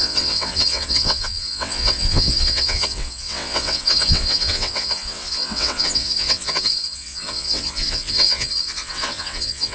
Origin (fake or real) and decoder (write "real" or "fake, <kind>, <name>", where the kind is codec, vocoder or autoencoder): fake, vocoder, WaveNeXt